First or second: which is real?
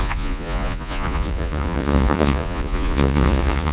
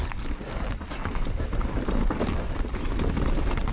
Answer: second